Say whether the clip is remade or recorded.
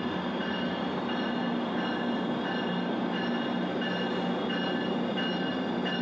recorded